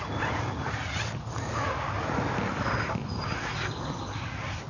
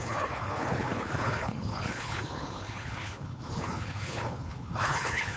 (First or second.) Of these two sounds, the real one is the first